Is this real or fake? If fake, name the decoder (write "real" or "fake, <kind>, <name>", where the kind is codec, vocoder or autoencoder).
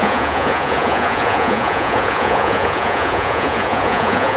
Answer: fake, vocoder, Vocos